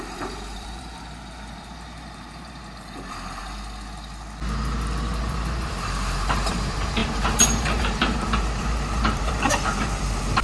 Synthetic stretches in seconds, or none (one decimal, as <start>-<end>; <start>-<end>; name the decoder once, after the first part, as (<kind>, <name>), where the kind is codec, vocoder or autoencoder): 0.0-3.4 (vocoder, BigVGAN v2); 5.2-10.4